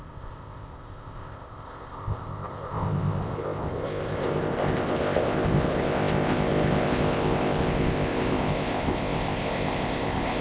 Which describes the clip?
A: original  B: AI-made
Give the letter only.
B